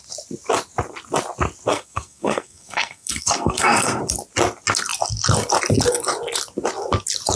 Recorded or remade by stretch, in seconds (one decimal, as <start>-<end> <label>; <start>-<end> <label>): 0.0-1.7 recorded; 1.7-4.0 remade; 4.0-7.4 recorded